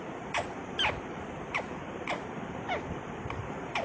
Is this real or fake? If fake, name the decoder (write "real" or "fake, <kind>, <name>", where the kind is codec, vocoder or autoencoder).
fake, vocoder, BigVGAN v2